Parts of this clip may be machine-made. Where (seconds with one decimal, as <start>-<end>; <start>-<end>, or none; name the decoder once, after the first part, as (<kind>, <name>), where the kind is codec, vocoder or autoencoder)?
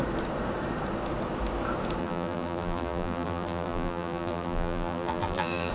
2.0-5.7 (vocoder, BigVGAN v2)